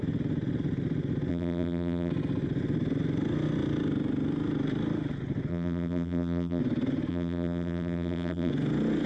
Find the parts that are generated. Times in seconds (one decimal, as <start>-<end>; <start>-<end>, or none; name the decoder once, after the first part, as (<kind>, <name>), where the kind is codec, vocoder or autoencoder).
1.3-2.1 (vocoder, BigVGAN v2); 5.5-6.6; 7.1-8.5